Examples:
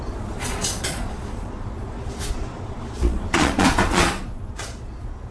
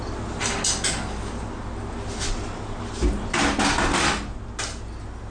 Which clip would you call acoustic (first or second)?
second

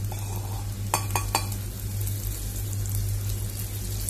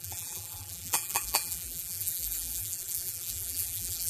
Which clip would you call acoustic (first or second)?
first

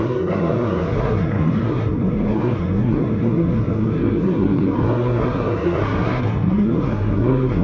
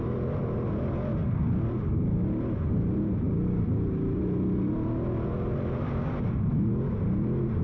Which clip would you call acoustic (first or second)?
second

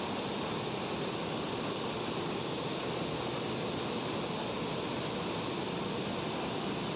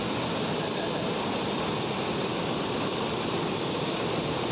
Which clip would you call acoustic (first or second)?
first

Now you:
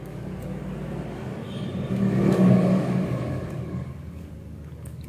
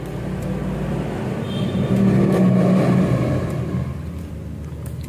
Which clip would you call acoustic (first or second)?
second